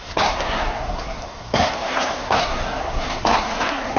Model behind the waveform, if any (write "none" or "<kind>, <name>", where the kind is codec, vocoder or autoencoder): codec, SNAC